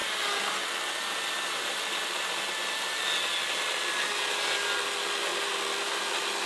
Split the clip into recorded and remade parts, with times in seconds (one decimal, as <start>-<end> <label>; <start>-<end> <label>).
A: 0.0-6.5 recorded